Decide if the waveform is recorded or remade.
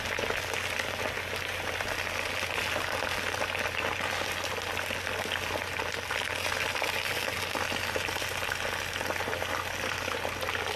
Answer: recorded